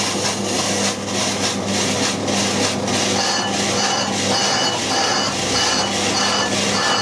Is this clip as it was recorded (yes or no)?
yes